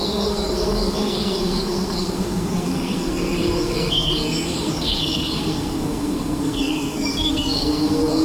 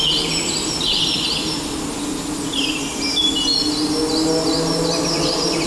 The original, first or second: second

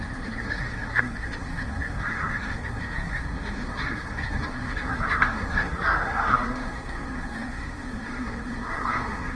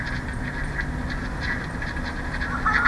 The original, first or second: second